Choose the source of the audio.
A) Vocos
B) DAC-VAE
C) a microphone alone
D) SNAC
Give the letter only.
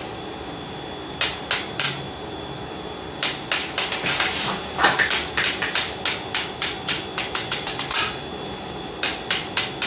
C